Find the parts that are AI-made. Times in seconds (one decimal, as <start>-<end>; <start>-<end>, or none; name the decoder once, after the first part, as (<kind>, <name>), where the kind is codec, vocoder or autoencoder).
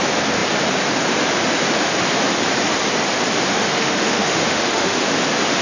3.5-5.1 (autoencoder, DAC-VAE)